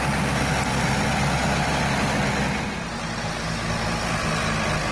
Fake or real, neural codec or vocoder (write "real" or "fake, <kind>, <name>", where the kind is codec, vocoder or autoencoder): real